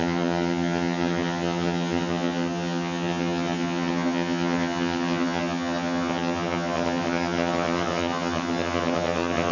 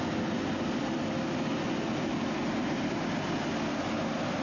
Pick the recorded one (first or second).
second